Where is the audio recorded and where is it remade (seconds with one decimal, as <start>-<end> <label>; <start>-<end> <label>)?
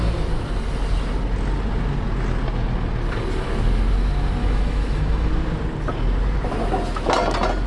0.0-4.4 recorded; 4.4-5.3 remade; 5.3-7.7 recorded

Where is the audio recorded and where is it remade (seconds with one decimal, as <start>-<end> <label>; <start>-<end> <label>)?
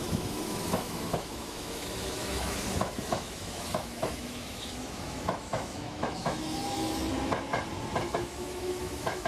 0.0-7.0 remade; 7.0-8.1 recorded; 8.1-9.3 remade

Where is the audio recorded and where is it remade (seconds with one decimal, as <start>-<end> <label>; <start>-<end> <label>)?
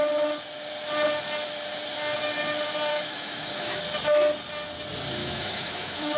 0.0-2.9 recorded; 2.9-3.8 remade; 3.8-5.2 recorded; 5.2-6.2 remade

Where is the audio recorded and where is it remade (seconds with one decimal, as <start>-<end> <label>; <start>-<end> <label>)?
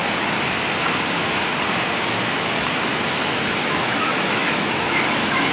0.0-2.0 recorded; 2.0-5.5 remade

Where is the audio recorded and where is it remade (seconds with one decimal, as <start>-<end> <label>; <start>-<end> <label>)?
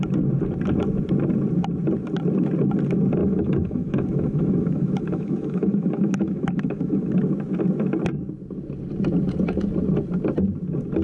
0.0-3.2 recorded; 3.2-7.1 remade; 7.1-11.0 recorded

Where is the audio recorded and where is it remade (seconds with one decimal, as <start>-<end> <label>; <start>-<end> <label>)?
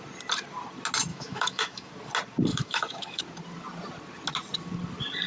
0.0-1.1 recorded; 1.1-1.9 remade; 1.9-2.5 recorded; 2.5-3.2 remade; 3.2-5.3 recorded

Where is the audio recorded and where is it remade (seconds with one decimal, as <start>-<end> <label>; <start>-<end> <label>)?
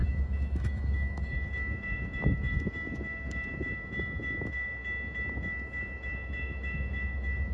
0.0-4.8 remade; 4.8-5.3 recorded; 5.3-7.5 remade